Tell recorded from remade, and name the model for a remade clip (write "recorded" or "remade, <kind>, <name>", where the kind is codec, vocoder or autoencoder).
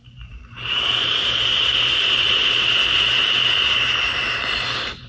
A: remade, vocoder, BigVGAN v2